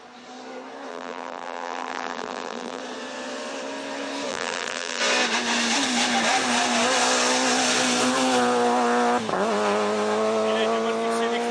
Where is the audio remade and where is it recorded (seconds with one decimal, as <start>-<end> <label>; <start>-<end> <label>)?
0.0-0.9 recorded; 0.9-2.8 remade; 2.8-4.3 recorded; 4.3-5.0 remade; 5.0-11.5 recorded